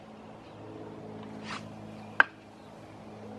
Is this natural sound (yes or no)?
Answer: yes